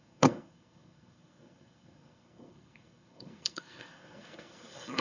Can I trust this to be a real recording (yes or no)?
no